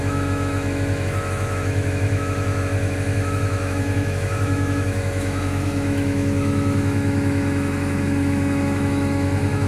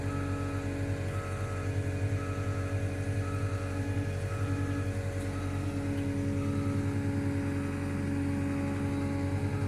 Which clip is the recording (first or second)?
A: second